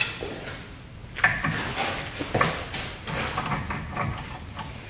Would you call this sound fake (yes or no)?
no